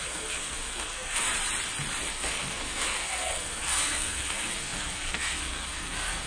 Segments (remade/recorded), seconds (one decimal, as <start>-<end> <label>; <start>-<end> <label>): 0.0-1.3 remade; 1.3-2.1 recorded; 2.1-6.3 remade